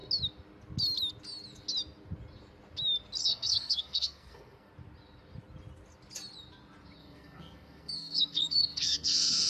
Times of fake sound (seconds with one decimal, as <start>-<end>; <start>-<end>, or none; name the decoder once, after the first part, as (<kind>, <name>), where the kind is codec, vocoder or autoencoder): 3.2-4.7 (codec, SNAC); 7.0-9.5